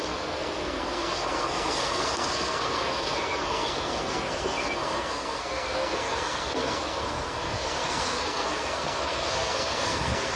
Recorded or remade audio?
remade